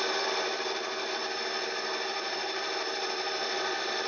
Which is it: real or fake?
real